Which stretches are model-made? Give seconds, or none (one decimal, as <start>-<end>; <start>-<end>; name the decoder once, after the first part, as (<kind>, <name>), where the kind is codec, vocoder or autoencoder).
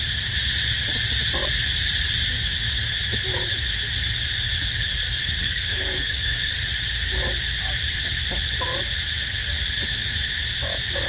5.4-6.5 (codec, SNAC)